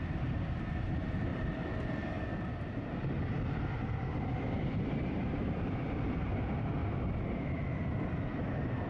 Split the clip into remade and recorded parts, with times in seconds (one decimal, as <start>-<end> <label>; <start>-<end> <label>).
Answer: 0.0-1.3 remade; 1.3-4.2 recorded; 4.2-6.8 remade; 6.8-8.3 recorded; 8.3-8.9 remade